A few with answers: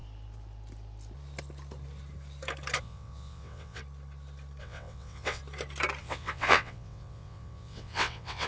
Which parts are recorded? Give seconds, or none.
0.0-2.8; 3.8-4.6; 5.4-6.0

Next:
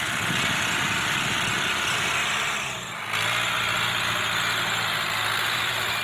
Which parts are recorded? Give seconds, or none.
0.0-6.0

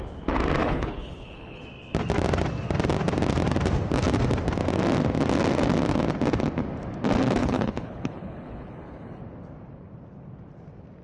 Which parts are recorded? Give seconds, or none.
0.0-0.6; 1.6-7.4; 9.2-11.0

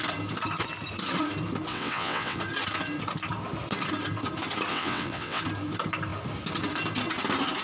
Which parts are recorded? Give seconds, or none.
0.0-1.7; 2.4-4.7; 5.4-7.6

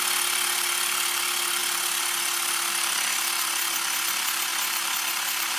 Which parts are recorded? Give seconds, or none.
0.0-5.6

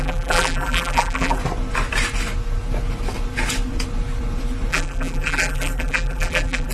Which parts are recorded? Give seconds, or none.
1.4-4.7

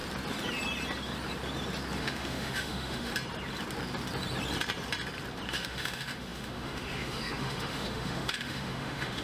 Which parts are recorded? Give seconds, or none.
0.0-2.0; 3.1-5.5

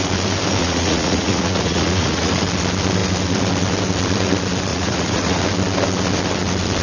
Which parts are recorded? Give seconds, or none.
0.0-0.6; 2.3-4.7; 5.4-6.8